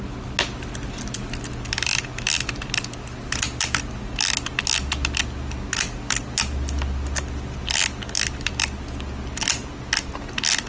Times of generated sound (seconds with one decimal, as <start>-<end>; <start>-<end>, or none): none